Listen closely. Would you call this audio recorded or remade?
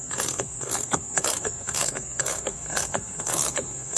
remade